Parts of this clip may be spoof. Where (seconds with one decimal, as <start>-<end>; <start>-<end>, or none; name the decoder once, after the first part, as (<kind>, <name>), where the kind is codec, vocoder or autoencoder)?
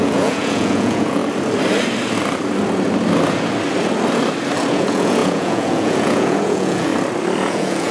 0.0-1.2 (vocoder, Vocos); 4.7-6.9; 7.4-7.9